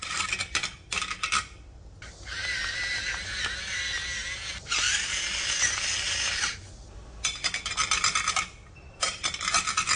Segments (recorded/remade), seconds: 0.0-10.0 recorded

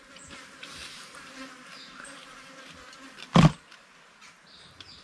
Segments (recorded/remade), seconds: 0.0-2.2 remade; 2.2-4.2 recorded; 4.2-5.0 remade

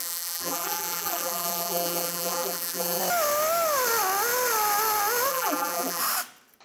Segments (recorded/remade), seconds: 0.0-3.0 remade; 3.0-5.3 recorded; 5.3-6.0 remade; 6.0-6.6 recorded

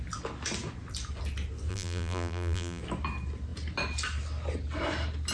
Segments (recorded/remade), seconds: 0.0-1.7 recorded; 1.7-2.8 remade; 2.8-5.3 recorded

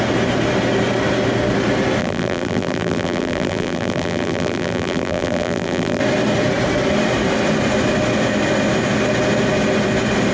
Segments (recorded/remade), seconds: 0.0-2.0 recorded; 2.0-6.0 remade; 6.0-10.3 recorded

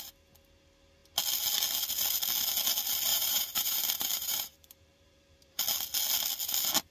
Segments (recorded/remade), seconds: 0.0-3.1 recorded; 3.1-5.6 remade; 5.6-6.9 recorded